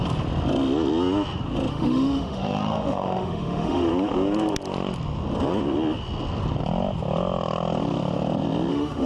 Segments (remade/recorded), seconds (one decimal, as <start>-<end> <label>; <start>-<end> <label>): 0.0-1.7 recorded; 1.7-3.9 remade; 3.9-8.7 recorded; 8.7-9.1 remade